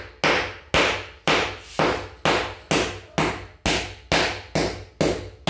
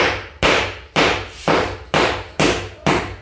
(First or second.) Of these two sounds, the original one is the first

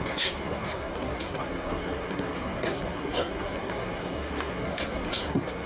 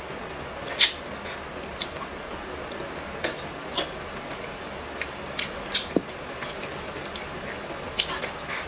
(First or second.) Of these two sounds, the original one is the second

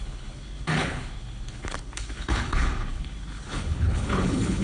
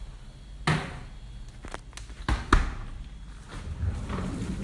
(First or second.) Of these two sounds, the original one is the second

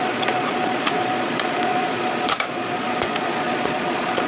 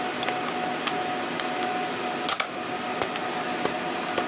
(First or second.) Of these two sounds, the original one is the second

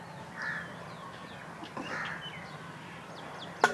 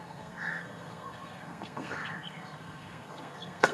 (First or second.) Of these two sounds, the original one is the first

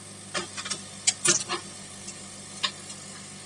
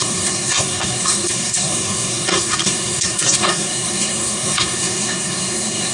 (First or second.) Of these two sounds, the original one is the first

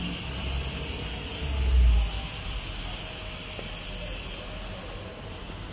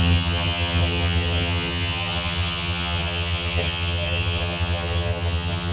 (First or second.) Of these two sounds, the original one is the first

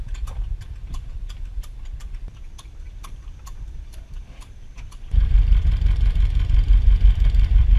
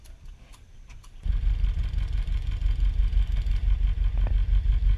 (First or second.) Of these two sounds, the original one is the second